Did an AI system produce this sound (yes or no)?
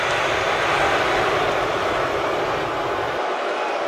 no